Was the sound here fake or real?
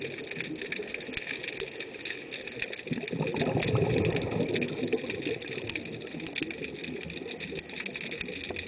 real